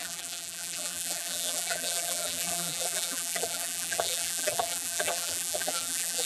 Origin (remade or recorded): remade